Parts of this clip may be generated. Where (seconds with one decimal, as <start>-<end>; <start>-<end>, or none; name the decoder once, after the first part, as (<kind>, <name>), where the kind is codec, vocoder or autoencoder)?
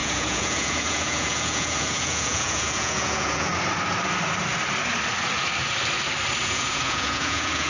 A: 0.0-3.5 (vocoder, Vocos); 6.4-7.7